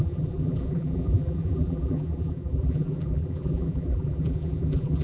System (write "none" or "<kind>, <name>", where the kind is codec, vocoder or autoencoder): vocoder, BigVGAN v2